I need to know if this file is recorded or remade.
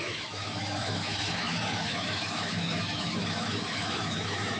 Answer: remade